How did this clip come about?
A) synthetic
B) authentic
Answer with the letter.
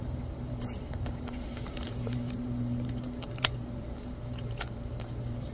A